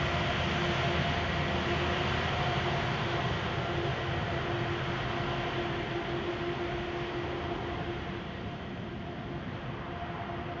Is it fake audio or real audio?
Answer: real